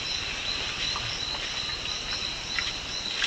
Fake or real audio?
real